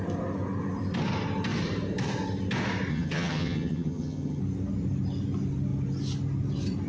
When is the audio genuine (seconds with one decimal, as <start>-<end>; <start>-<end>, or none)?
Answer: 0.0-2.9; 4.4-6.9